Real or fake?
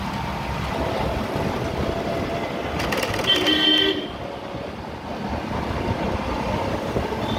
real